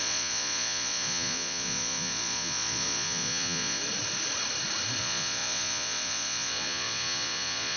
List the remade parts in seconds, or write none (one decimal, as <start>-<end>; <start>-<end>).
0.0-3.8; 5.0-7.8